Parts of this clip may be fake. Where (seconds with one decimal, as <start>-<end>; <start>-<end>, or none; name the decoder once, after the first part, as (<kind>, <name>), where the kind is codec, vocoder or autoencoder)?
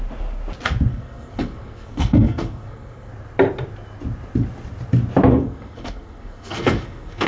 0.9-3.1 (codec, SNAC); 5.3-7.3